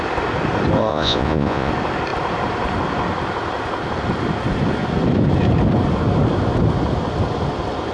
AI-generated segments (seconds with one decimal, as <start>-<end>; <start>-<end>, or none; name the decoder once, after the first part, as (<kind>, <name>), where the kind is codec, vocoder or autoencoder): 0.9-1.7 (vocoder, Vocos)